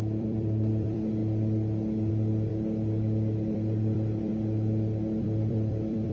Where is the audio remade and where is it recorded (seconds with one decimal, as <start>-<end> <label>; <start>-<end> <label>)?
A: 0.0-1.2 remade; 1.2-2.1 recorded; 2.1-2.5 remade; 2.5-3.5 recorded; 3.5-4.3 remade; 4.3-5.2 recorded; 5.2-6.1 remade